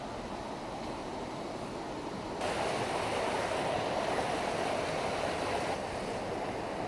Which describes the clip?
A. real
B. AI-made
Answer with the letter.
A